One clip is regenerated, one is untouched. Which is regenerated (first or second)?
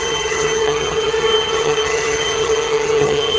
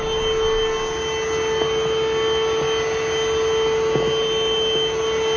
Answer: first